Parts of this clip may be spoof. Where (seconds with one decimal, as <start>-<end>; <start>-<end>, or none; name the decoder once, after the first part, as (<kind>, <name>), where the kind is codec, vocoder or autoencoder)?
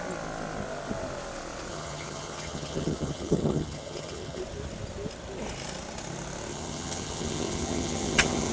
1.7-4.4 (vocoder, HiFi-GAN); 6.5-8.5